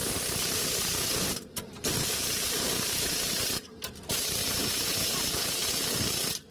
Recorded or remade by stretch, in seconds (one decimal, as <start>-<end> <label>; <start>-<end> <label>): 0.0-3.9 remade; 3.9-4.4 recorded; 4.4-5.4 remade; 5.4-6.5 recorded